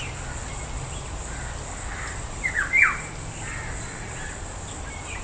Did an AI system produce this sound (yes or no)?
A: no